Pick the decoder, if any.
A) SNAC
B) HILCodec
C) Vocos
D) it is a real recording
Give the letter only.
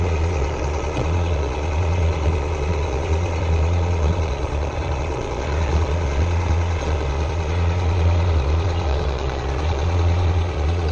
C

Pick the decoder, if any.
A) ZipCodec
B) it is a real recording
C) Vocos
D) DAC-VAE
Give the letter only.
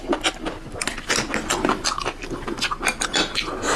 B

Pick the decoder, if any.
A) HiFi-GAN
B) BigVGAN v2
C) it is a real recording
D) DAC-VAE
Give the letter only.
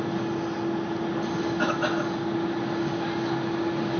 C